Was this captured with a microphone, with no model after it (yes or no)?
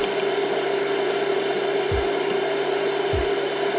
yes